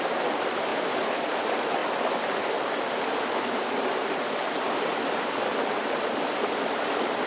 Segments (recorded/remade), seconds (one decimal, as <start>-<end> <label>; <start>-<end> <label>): 0.0-1.8 remade; 1.8-4.9 recorded; 4.9-7.3 remade